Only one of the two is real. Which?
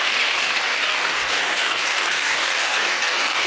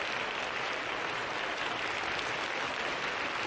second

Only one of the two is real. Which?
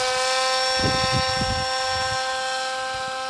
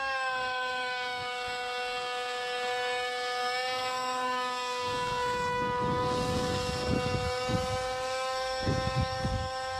first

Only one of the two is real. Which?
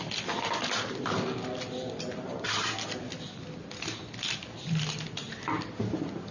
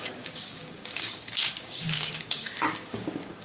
first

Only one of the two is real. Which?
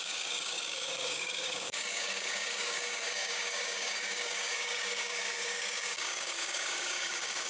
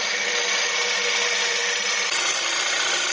second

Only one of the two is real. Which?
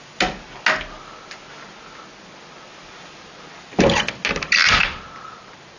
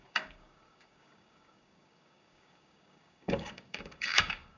first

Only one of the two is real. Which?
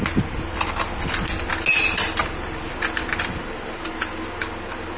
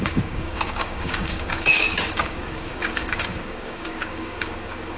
first